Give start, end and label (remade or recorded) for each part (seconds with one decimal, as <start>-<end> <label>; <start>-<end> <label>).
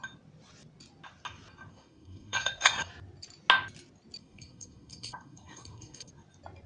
0.0-1.7 recorded; 1.7-2.9 remade; 2.9-4.2 recorded; 4.2-6.1 remade; 6.1-6.7 recorded